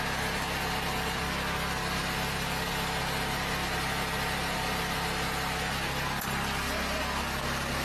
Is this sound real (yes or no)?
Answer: yes